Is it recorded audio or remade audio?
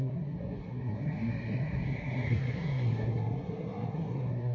remade